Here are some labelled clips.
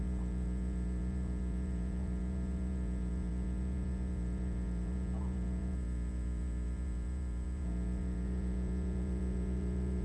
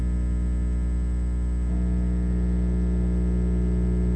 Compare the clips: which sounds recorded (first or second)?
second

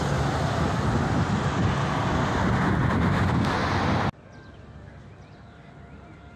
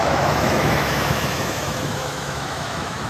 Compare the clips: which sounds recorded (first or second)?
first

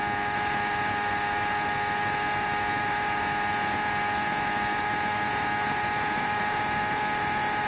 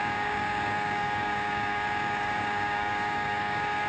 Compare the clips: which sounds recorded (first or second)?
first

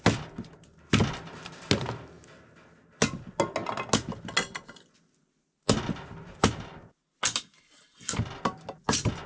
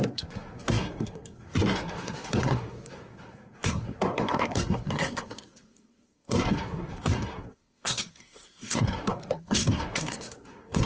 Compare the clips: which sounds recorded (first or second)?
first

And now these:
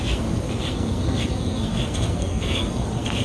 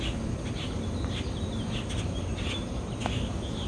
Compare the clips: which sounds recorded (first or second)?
second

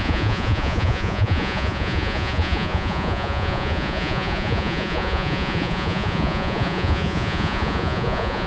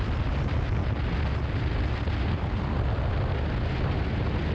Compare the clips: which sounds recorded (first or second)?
second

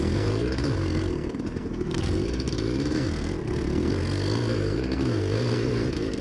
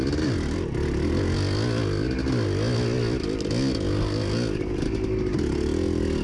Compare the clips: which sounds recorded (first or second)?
second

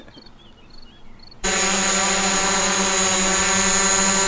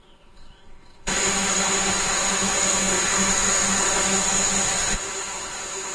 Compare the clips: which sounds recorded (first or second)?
first